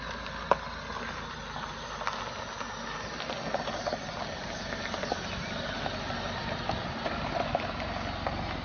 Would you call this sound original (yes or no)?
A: yes